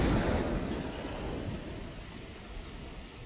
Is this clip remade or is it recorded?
recorded